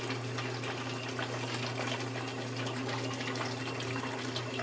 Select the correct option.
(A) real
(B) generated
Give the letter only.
A